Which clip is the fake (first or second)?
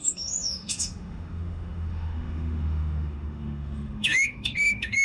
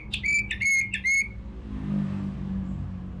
first